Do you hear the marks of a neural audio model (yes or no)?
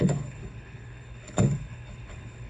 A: yes